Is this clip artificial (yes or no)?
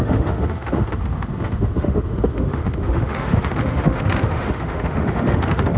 yes